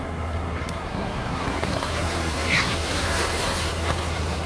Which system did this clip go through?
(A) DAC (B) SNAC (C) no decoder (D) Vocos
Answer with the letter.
B